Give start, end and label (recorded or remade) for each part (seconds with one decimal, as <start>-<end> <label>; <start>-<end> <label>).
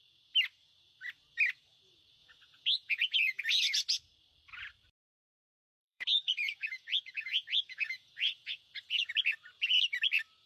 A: 0.0-2.2 recorded; 2.2-3.4 remade; 3.4-5.6 recorded; 5.6-9.1 remade; 9.1-10.5 recorded